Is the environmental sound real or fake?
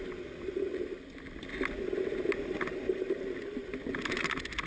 real